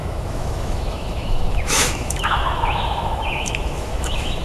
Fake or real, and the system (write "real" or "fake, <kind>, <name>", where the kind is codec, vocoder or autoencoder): fake, autoencoder, DAC-VAE